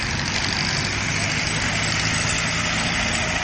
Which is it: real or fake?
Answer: real